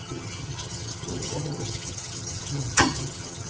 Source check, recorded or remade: remade